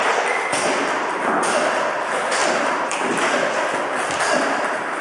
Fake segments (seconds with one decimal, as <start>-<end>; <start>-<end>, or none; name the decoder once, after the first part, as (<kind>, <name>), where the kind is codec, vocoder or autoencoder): none